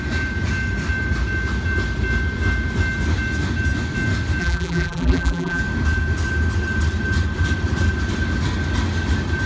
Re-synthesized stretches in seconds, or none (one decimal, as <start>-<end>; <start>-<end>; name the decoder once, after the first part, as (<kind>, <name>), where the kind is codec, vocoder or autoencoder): 4.4-5.6 (vocoder, BigVGAN v2)